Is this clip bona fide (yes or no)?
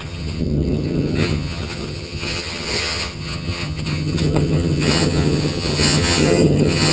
no